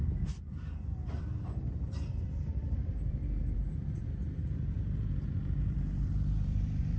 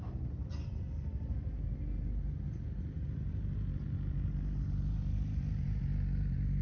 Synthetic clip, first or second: first